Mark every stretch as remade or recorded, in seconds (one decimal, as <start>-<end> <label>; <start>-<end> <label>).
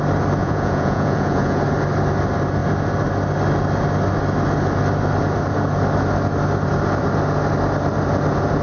0.0-0.4 recorded; 0.4-1.6 remade; 1.6-8.6 recorded